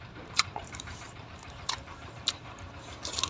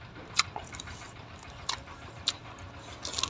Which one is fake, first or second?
first